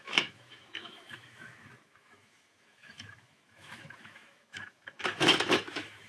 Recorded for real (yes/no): no